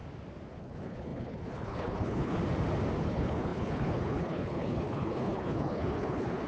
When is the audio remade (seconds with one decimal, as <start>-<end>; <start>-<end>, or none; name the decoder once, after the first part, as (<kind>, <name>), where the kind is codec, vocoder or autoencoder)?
0.6-2.4 (codec, HILCodec); 3.0-6.5